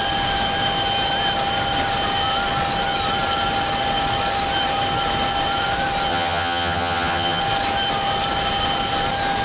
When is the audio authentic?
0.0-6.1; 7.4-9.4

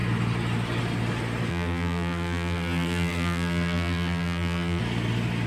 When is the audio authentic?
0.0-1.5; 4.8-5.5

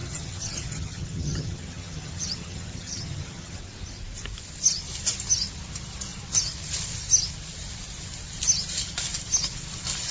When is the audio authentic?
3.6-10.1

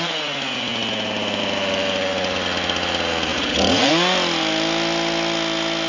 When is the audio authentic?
0.0-3.3; 3.9-5.9

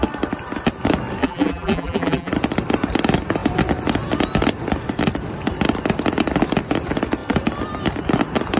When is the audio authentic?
0.0-1.2; 2.3-8.6

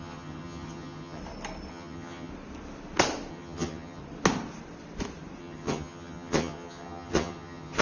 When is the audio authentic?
1.2-1.7; 2.3-3.3; 4.0-5.4

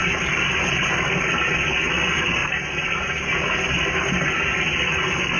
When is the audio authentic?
1.3-2.4; 3.3-5.4